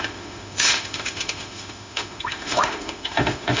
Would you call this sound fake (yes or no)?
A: yes